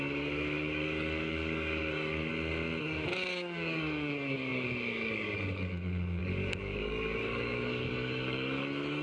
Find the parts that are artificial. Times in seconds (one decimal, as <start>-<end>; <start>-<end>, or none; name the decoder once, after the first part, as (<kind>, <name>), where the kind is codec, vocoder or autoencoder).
0.0-2.3 (codec, DAC); 2.8-9.0